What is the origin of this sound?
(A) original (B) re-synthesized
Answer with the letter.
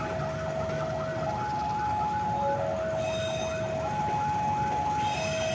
A